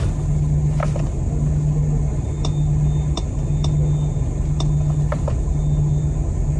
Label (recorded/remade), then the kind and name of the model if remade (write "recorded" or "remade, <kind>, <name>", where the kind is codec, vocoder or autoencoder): recorded